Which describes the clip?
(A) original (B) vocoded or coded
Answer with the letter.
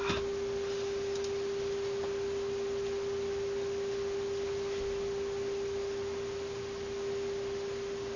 A